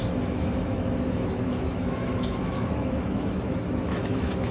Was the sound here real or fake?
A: fake